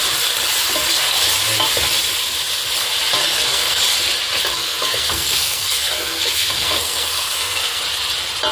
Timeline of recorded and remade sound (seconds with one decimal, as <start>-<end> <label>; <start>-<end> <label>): 0.0-3.2 recorded; 3.2-3.8 remade; 3.8-4.5 recorded; 4.5-7.8 remade; 7.8-8.5 recorded